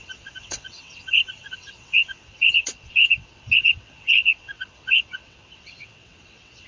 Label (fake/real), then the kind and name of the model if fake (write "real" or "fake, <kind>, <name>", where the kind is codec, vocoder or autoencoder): fake, vocoder, WaveNeXt